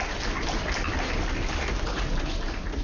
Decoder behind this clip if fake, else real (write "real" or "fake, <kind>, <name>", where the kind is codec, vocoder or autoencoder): real